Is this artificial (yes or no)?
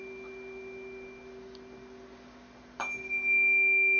no